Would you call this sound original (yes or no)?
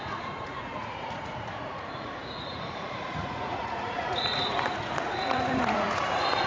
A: no